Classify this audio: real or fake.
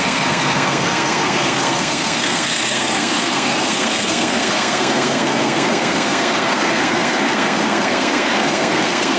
fake